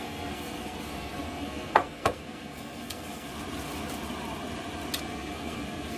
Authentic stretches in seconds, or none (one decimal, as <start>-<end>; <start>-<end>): 3.3-5.0